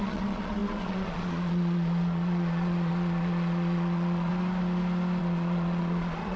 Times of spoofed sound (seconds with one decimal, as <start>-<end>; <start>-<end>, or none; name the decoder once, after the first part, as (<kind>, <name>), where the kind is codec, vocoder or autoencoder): 0.0-4.3 (vocoder, Vocos); 5.2-6.4

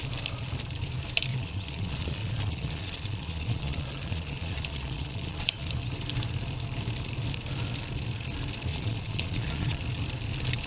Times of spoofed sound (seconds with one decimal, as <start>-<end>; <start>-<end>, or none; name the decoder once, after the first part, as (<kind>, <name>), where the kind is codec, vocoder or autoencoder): 1.3-5.7 (vocoder, Vocos); 8.7-9.8

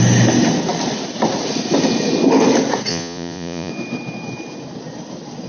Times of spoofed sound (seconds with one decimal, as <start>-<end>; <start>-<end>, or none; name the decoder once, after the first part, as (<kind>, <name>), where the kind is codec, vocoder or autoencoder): 2.9-3.7 (vocoder, Vocos)

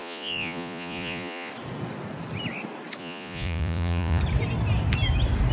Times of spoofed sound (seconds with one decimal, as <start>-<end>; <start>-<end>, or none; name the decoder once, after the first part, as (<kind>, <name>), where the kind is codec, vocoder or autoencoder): 0.0-1.5 (vocoder, Vocos); 3.0-4.2

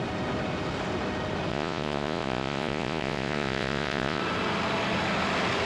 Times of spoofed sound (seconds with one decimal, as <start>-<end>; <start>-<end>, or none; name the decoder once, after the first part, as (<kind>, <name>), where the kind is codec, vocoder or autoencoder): 1.5-4.2 (vocoder, Vocos)

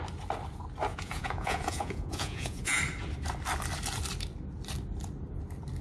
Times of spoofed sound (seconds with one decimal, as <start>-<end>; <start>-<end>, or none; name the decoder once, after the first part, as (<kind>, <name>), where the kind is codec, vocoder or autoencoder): 0.9-2.8 (vocoder, Vocos)